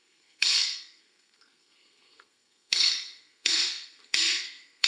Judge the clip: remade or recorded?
remade